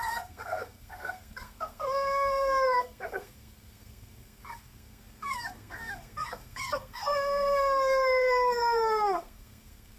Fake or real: fake